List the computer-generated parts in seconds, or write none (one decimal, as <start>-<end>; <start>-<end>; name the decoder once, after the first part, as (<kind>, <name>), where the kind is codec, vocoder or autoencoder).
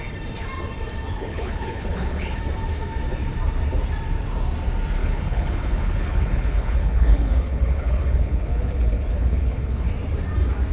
1.1-2.4 (codec, HILCodec); 5.0-9.9